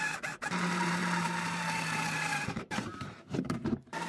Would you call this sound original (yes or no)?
no